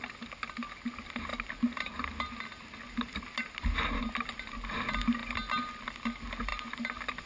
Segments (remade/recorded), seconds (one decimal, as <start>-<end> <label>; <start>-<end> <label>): 0.0-7.3 recorded